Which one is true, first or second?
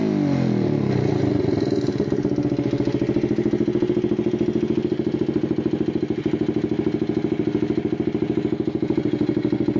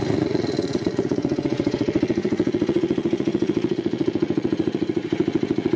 first